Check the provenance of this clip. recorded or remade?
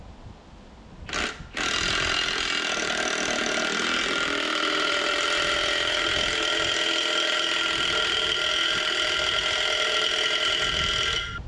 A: recorded